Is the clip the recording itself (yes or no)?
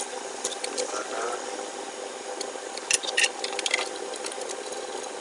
yes